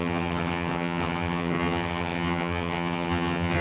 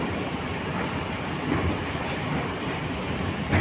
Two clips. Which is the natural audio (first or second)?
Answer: second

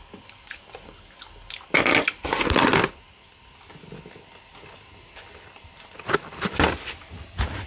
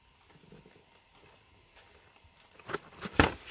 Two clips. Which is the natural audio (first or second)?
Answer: first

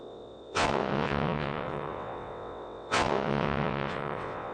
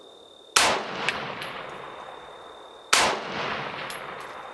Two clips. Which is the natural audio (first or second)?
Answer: second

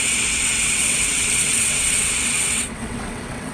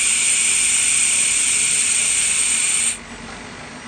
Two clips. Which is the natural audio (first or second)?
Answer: second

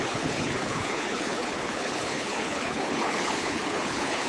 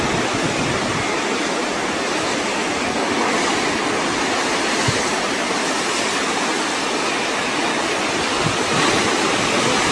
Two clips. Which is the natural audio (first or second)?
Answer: second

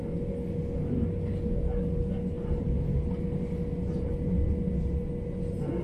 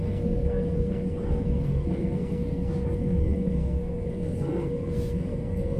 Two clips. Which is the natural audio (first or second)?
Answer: first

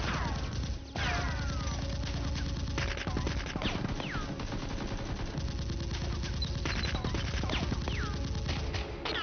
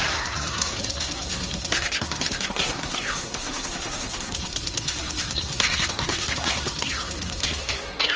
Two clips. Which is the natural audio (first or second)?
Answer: first